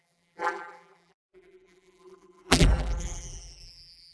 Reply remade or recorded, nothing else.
remade